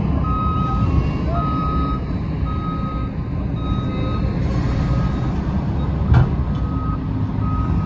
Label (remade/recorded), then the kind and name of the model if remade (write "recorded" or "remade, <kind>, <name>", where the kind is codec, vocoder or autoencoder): recorded